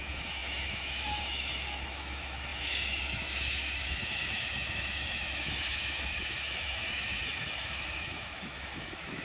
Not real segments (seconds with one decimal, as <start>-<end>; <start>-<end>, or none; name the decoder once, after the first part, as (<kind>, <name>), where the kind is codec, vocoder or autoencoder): 0.0-9.2 (autoencoder, DAC-VAE)